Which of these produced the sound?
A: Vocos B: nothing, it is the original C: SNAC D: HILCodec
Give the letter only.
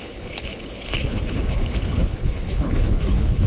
D